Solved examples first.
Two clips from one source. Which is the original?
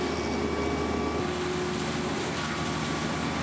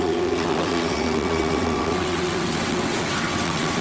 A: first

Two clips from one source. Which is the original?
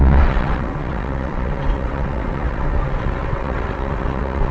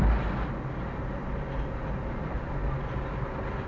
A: second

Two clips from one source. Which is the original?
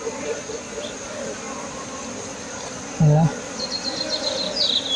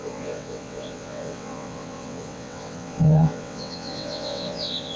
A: first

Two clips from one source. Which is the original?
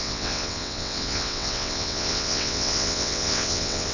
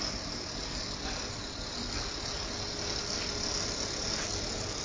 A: second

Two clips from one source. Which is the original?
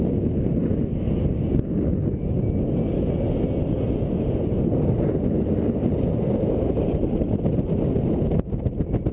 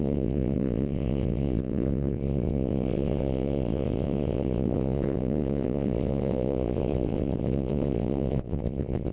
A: first